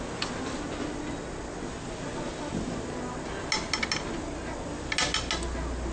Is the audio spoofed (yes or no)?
no